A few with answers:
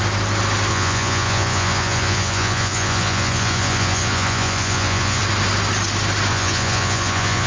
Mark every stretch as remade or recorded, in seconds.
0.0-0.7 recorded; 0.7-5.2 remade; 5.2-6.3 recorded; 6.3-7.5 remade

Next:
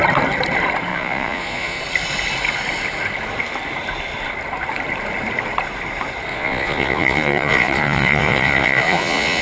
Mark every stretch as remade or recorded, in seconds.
0.0-0.9 recorded; 0.9-1.8 remade; 1.8-6.3 recorded; 6.3-9.4 remade

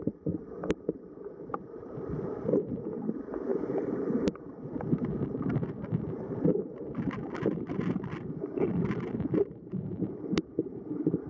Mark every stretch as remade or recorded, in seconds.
0.0-11.3 recorded

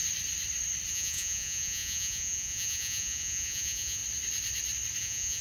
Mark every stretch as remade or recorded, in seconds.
0.0-0.9 recorded; 0.9-4.0 remade; 4.0-5.0 recorded; 5.0-5.4 remade

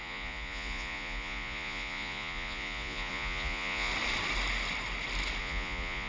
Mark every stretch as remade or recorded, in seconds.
0.0-3.9 remade; 3.9-5.4 recorded; 5.4-6.1 remade

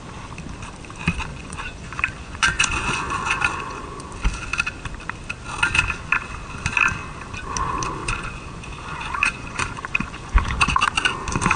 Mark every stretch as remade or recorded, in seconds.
0.0-1.3 recorded; 1.3-4.1 remade; 4.1-8.0 recorded; 8.0-10.8 remade; 10.8-11.6 recorded

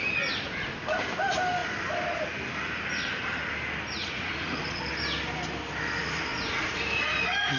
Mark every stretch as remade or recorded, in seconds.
0.0-4.0 recorded; 4.0-4.8 remade; 4.8-6.3 recorded; 6.3-6.8 remade; 6.8-7.6 recorded

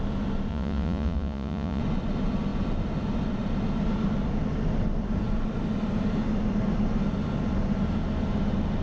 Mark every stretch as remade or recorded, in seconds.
0.0-0.5 recorded; 0.5-1.8 remade; 1.8-8.8 recorded